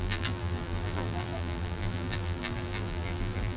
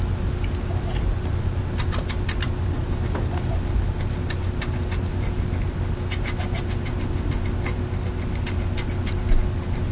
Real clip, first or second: second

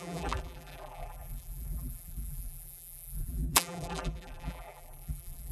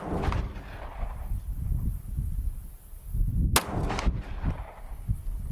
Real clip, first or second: second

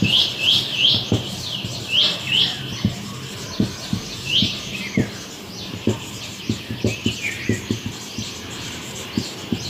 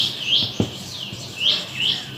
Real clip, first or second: second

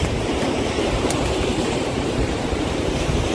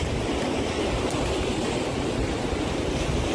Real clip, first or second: second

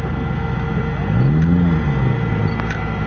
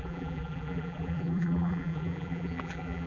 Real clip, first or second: first